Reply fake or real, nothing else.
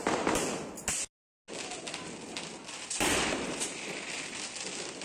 real